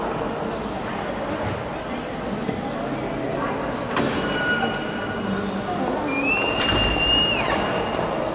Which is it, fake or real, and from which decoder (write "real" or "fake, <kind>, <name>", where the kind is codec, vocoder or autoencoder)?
real